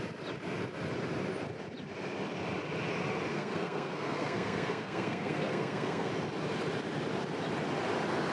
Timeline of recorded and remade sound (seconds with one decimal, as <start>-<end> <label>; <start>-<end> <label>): 0.0-3.3 recorded; 3.3-6.1 remade; 6.1-8.3 recorded